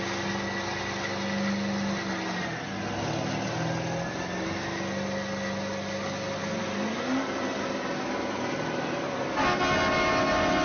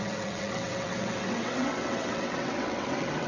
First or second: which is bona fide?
first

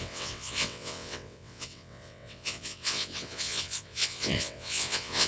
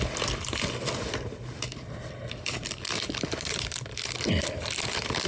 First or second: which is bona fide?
second